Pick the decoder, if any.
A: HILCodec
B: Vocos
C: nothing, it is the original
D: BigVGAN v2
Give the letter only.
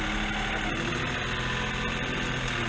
C